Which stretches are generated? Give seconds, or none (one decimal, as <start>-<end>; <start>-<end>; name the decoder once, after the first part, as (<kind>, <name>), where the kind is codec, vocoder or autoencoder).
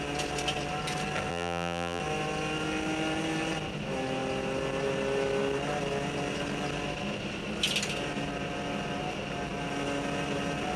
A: 1.3-2.0 (vocoder, BigVGAN v2)